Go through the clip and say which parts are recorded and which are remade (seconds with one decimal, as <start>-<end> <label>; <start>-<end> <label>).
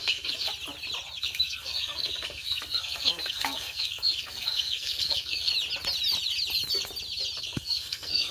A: 0.0-0.5 remade; 0.5-1.2 recorded; 1.2-5.5 remade; 5.5-7.4 recorded; 7.4-8.3 remade